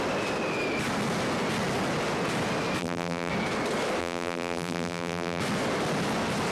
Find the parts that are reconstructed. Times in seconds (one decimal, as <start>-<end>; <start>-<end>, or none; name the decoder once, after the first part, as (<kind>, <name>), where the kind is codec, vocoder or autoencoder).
2.8-3.3 (vocoder, BigVGAN v2); 4.0-5.4